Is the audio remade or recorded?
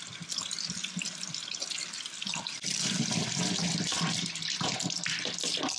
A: recorded